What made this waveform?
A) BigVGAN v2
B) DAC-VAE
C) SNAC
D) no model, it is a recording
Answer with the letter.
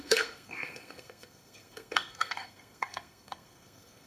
C